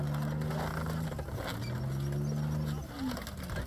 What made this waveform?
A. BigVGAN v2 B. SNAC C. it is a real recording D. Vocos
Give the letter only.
C